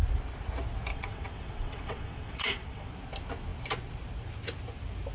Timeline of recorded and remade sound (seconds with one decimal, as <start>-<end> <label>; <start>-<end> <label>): 0.0-0.9 recorded; 0.9-2.9 remade; 2.9-5.1 recorded